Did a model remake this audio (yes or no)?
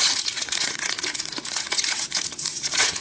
yes